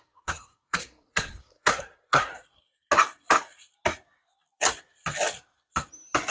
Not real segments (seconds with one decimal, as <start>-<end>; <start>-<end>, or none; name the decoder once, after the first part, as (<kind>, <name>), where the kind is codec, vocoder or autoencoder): 0.0-2.3 (codec, SNAC)